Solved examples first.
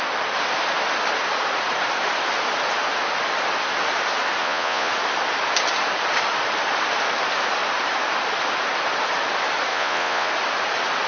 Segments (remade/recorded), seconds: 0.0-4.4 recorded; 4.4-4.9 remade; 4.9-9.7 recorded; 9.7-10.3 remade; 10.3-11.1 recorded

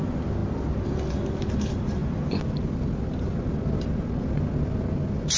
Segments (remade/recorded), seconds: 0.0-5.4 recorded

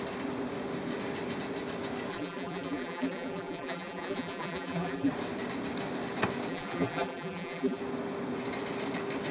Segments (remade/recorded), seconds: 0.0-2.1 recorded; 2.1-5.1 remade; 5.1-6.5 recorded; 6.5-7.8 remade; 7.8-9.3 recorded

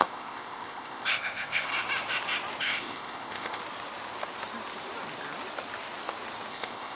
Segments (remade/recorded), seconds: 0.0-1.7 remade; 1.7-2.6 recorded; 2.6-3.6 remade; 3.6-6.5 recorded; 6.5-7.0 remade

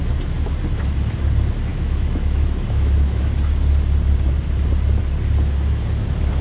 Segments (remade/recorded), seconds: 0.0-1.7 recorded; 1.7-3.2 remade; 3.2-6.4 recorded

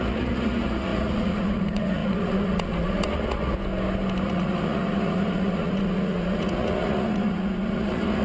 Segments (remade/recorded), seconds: 0.0-3.6 remade; 3.6-4.2 recorded; 4.2-8.2 remade

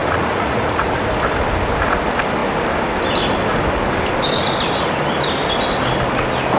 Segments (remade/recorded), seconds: 0.0-1.0 remade; 1.0-6.6 recorded